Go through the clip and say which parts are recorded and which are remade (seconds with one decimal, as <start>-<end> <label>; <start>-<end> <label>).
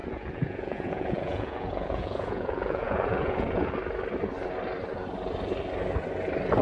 0.0-3.7 remade; 3.7-6.6 recorded